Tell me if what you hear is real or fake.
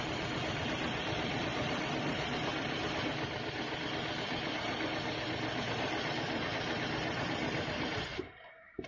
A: real